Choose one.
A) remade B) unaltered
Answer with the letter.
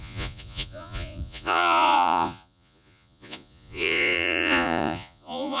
A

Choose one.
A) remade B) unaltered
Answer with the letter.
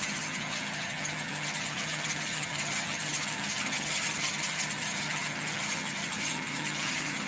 A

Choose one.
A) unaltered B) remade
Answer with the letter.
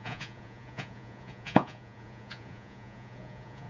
B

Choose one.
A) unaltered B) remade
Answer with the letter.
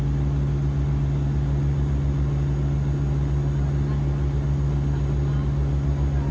A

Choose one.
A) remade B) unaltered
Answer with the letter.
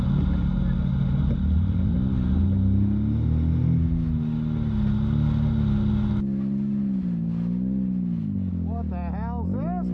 B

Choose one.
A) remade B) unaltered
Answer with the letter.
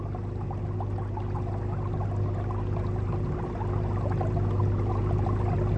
B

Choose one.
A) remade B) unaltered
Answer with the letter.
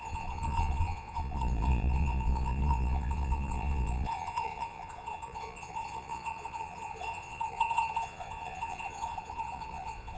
A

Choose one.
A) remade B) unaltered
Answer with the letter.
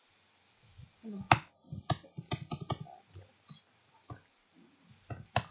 B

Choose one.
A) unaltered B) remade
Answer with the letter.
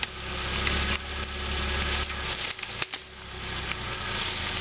A